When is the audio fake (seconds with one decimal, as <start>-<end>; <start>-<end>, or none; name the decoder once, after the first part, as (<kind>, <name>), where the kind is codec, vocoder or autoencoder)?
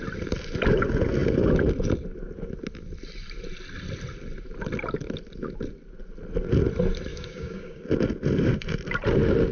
7.1-7.8 (codec, DAC)